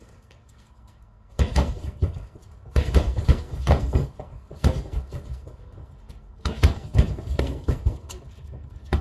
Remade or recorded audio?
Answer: remade